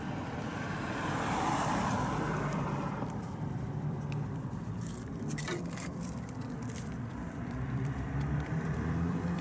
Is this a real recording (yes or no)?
no